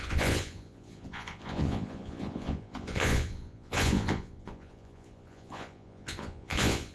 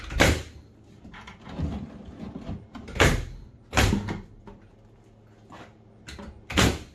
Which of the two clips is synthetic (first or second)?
first